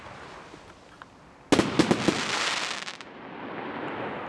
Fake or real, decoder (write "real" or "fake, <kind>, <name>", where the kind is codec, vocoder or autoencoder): real